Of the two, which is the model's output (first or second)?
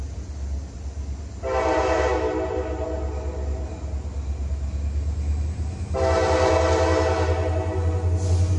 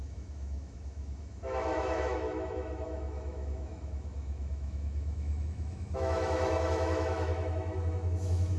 second